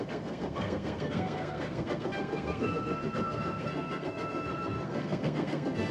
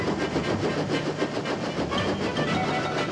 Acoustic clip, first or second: second